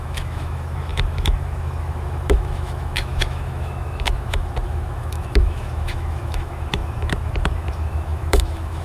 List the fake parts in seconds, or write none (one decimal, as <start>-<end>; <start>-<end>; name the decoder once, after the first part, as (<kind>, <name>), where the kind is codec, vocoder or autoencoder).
0.0-8.8 (autoencoder, DAC-VAE)